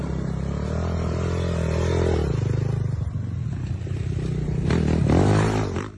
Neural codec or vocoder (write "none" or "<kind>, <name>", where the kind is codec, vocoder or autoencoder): none